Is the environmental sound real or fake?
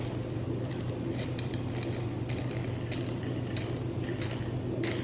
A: real